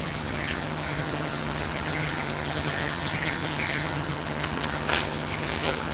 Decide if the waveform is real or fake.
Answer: fake